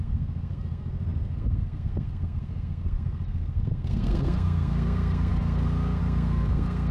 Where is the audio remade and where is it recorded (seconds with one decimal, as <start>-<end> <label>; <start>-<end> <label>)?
0.0-6.9 remade